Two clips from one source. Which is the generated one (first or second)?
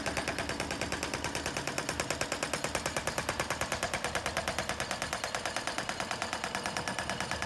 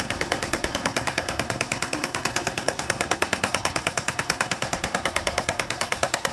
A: second